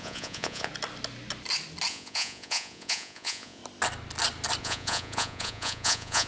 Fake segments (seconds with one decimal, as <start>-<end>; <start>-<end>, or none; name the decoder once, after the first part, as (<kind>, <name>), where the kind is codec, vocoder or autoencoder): 0.0-0.7 (vocoder, Vocos); 1.9-3.6; 4.6-6.3